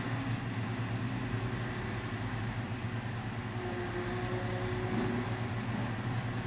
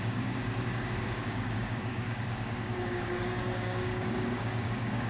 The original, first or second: first